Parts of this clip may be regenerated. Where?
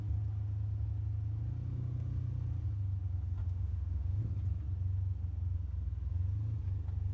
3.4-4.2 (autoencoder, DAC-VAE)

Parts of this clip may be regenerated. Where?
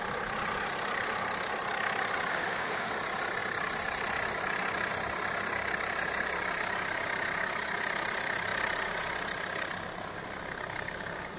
2.3-2.9 (autoencoder, DAC-VAE)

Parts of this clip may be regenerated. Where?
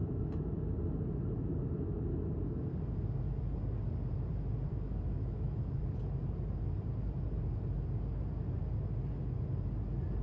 4.7-5.8 (autoencoder, DAC-VAE)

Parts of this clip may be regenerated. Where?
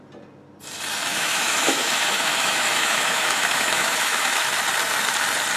1.1-4.5 (autoencoder, DAC-VAE)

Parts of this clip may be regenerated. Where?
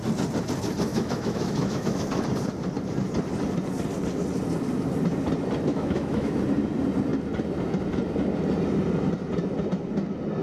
0.9-2.0 (autoencoder, DAC-VAE); 5.7-6.4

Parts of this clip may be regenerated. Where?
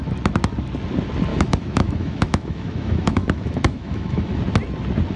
1.3-4.4 (autoencoder, DAC-VAE)